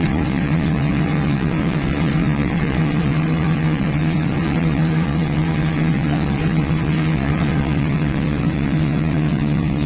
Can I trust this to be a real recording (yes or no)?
no